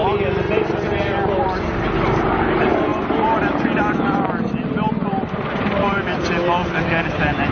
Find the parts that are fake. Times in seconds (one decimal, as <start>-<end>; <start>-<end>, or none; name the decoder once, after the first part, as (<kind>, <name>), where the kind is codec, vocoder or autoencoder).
none